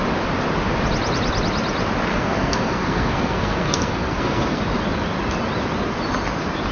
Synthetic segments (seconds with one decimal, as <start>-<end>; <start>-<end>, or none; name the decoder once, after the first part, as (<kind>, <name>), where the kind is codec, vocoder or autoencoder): 2.1-4.6 (codec, SNAC)